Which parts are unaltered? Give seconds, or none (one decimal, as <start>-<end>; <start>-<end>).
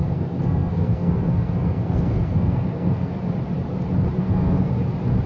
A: 3.2-4.2; 4.7-5.3